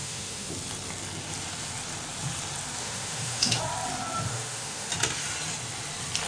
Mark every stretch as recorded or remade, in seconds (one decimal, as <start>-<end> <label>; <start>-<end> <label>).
0.0-0.5 remade; 0.5-2.8 recorded; 2.8-3.6 remade; 3.6-4.3 recorded; 4.3-4.9 remade; 4.9-6.3 recorded